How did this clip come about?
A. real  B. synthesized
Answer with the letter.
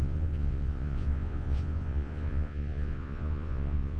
B